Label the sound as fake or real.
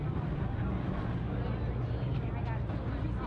real